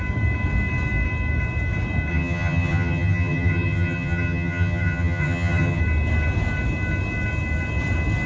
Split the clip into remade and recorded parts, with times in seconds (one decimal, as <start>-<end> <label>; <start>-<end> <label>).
0.0-2.1 recorded; 2.1-5.8 remade; 5.8-8.3 recorded